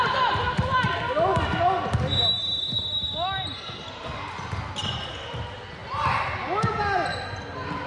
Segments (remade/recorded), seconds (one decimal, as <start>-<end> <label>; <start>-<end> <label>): 0.0-7.9 recorded